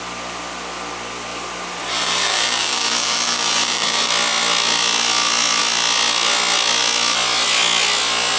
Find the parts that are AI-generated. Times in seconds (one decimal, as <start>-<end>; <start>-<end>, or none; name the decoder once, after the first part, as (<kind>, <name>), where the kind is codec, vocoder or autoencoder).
1.3-4.1 (vocoder, BigVGAN v2)

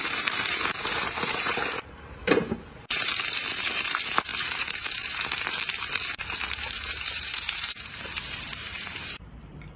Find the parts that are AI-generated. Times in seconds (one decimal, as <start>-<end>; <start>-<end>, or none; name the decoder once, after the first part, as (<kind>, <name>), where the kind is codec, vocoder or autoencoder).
0.0-9.8 (vocoder, BigVGAN v2)

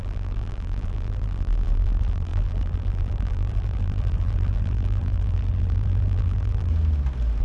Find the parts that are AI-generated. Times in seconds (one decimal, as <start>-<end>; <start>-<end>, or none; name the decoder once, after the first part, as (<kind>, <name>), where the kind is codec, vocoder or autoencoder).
0.0-6.7 (vocoder, BigVGAN v2)